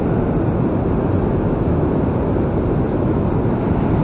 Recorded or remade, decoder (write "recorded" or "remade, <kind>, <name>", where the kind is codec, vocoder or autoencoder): recorded